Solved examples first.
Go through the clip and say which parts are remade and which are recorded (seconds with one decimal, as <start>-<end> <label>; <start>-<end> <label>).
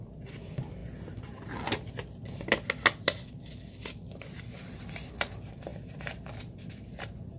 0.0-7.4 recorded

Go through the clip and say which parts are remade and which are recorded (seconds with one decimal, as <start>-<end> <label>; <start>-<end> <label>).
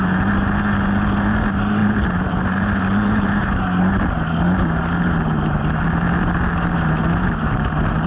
0.0-1.8 recorded; 1.8-3.8 remade; 3.8-8.1 recorded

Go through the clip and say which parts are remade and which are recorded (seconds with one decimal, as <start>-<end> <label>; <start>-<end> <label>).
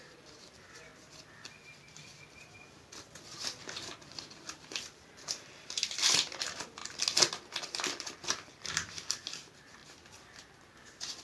0.0-0.9 remade; 0.9-3.6 recorded; 3.6-6.8 remade; 6.8-7.9 recorded; 7.9-9.8 remade; 9.8-11.2 recorded